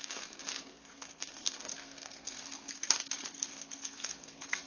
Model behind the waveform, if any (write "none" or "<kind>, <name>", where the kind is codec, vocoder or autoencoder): codec, SNAC